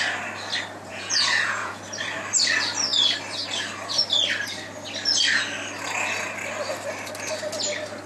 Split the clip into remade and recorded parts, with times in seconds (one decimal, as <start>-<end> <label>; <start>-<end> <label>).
0.0-0.9 recorded; 0.9-1.8 remade; 1.8-8.1 recorded

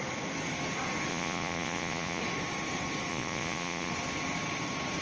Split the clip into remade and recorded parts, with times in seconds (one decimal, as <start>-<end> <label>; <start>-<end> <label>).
0.0-1.1 recorded; 1.1-2.2 remade; 2.2-3.1 recorded; 3.1-3.9 remade; 3.9-5.0 recorded

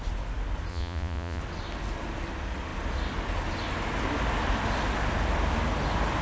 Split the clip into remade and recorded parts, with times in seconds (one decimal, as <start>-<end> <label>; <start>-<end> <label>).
0.0-0.7 recorded; 0.7-1.4 remade; 1.4-6.2 recorded

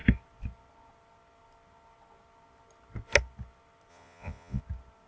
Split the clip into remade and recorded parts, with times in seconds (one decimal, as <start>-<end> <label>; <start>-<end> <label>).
0.0-3.9 recorded; 3.9-4.6 remade; 4.6-5.1 recorded

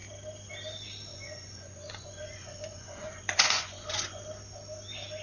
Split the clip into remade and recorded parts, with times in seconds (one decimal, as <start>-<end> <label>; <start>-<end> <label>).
0.0-1.1 recorded; 1.1-4.2 remade; 4.2-5.2 recorded

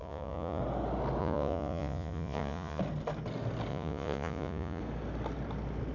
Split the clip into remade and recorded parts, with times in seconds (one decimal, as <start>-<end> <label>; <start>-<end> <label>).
0.0-0.6 remade; 0.6-1.2 recorded; 1.2-2.8 remade; 2.8-3.7 recorded; 3.7-4.8 remade; 4.8-5.9 recorded

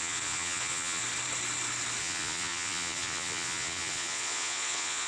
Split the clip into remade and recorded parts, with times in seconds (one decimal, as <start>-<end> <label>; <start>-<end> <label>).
0.0-1.0 remade; 1.0-2.0 recorded; 2.0-5.1 remade

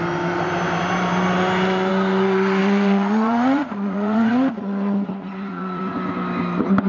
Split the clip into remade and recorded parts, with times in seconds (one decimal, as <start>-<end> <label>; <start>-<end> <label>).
0.0-2.6 recorded; 2.6-5.8 remade; 5.8-6.9 recorded